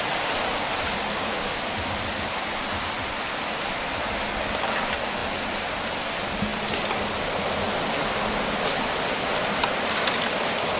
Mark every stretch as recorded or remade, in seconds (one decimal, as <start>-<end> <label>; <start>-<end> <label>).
0.0-10.8 recorded